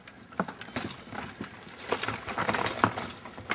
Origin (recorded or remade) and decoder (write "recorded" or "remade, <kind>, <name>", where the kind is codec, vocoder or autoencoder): recorded